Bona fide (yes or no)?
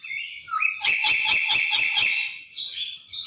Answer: no